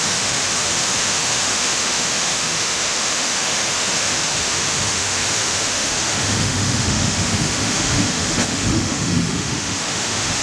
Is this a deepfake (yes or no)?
yes